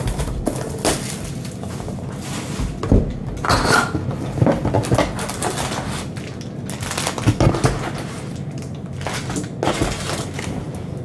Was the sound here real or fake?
real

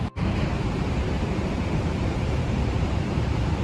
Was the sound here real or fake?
fake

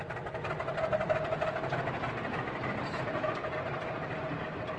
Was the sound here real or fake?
real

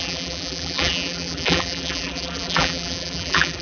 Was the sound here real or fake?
fake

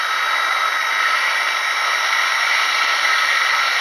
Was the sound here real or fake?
real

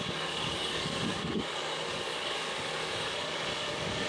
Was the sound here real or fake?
fake